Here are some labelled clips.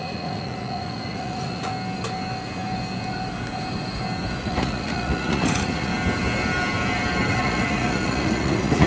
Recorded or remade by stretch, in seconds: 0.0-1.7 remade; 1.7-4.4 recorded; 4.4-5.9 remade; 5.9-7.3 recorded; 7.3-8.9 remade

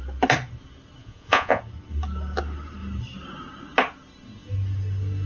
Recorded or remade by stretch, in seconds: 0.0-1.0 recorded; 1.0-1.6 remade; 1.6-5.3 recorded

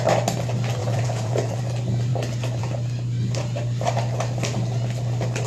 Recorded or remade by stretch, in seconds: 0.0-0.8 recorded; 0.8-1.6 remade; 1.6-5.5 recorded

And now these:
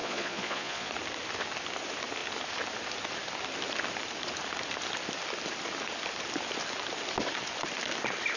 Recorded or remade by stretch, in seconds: 0.0-0.9 remade; 0.9-8.4 recorded

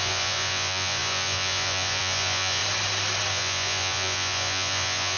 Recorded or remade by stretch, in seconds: 0.0-2.6 remade; 2.6-3.3 recorded; 3.3-5.2 remade